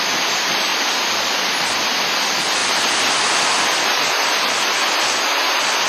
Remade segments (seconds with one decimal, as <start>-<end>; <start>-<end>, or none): none